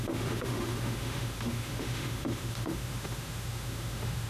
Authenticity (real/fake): fake